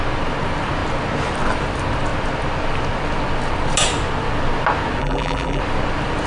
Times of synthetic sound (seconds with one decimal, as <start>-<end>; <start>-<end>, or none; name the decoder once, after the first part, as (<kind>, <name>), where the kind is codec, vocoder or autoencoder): 5.0-5.6 (vocoder, BigVGAN v2)